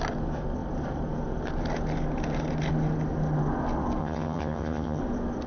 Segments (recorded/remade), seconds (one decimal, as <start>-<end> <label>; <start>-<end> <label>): 0.0-4.0 recorded; 4.0-5.0 remade; 5.0-5.5 recorded